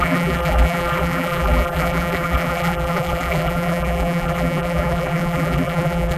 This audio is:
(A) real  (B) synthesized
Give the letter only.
B